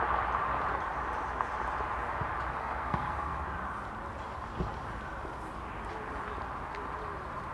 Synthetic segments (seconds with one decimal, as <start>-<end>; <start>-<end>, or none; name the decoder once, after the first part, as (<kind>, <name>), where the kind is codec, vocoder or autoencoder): 2.6-3.4 (codec, SNAC)